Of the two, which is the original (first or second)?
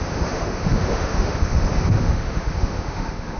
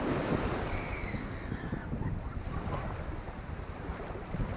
second